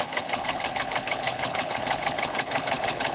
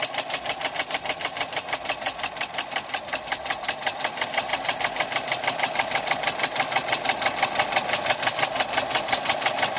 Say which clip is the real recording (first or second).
second